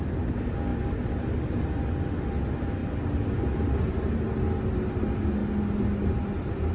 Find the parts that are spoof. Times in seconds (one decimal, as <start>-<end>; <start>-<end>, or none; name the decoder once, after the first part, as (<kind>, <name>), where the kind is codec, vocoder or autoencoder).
none